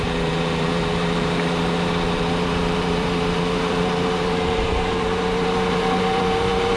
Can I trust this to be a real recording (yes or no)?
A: no